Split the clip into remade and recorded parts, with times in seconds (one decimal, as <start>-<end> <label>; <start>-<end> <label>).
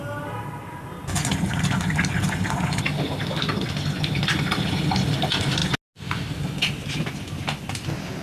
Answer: 0.0-8.2 recorded